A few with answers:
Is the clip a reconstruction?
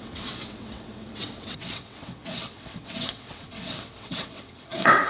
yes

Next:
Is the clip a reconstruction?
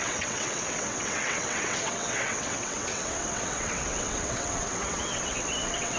yes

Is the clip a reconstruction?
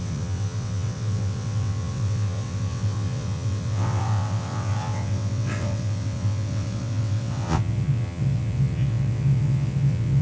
yes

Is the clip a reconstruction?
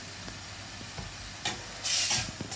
no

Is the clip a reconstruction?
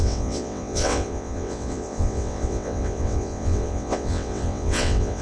yes